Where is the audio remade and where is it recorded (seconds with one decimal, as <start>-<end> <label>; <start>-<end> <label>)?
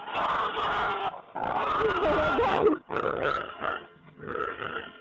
0.0-2.5 recorded; 2.5-5.0 remade